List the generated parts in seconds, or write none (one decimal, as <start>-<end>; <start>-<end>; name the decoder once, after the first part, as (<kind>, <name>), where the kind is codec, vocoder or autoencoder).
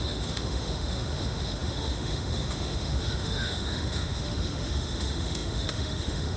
0.0-6.4 (autoencoder, DAC-VAE)